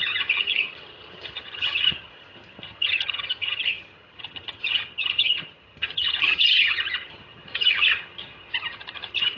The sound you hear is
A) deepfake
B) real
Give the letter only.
A